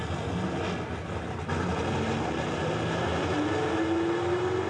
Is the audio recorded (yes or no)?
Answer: yes